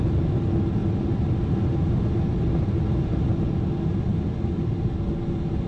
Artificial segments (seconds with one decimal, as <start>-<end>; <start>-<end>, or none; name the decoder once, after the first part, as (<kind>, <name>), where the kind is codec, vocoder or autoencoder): none